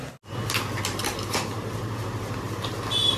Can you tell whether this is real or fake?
real